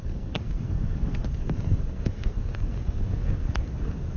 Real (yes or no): no